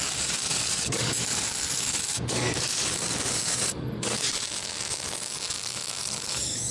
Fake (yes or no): yes